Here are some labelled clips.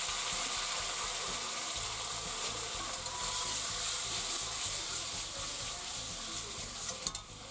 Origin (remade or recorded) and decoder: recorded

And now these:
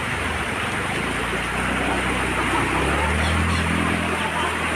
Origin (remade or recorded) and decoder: recorded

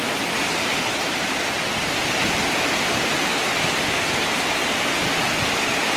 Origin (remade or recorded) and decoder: recorded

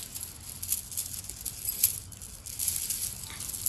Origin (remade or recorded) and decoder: recorded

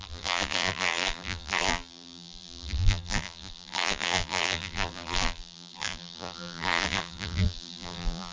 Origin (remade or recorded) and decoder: remade, vocoder, BigVGAN v2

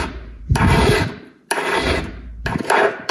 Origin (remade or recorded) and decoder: remade, vocoder, BigVGAN v2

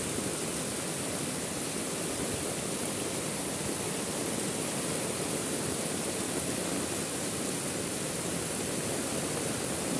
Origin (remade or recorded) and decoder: remade, vocoder, BigVGAN v2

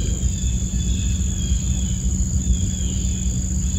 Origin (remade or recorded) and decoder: recorded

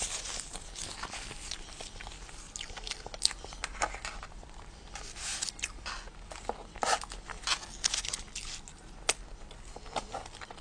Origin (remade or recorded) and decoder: recorded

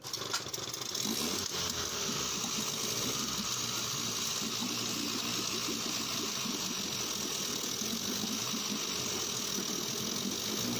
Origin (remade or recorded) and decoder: recorded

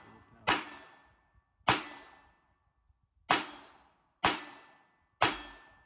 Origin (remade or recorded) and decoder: recorded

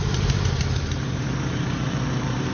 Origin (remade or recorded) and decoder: remade, vocoder, BigVGAN v2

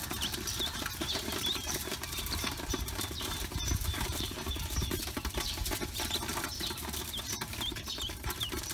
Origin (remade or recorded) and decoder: remade, vocoder, BigVGAN v2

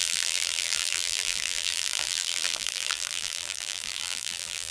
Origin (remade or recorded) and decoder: remade, vocoder, BigVGAN v2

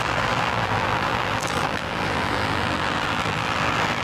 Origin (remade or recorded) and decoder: remade, vocoder, BigVGAN v2